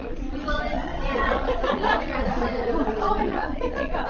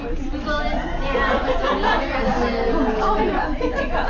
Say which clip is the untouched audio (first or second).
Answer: second